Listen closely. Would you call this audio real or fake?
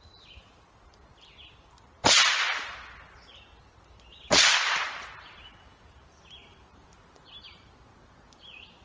real